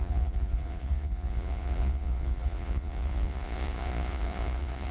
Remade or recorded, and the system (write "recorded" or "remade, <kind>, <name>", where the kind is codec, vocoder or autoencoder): remade, vocoder, Vocos